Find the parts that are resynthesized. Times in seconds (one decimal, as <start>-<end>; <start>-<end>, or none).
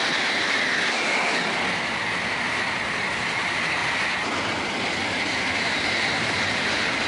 0.0-0.7; 3.2-3.8; 4.4-7.1